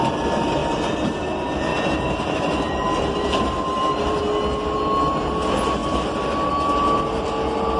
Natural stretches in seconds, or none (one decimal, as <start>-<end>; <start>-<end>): 0.0-1.7; 4.2-7.8